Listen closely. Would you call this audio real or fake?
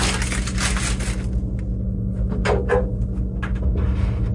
real